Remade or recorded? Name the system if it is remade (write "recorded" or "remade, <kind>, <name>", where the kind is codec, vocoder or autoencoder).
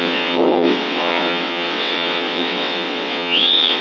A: remade, vocoder, WaveNeXt